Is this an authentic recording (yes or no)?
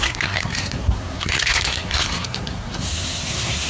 no